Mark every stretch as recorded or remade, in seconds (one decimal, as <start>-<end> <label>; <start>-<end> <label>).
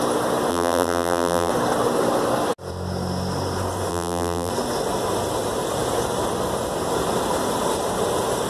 0.0-0.5 recorded; 0.5-1.5 remade; 1.5-3.9 recorded; 3.9-4.5 remade; 4.5-8.5 recorded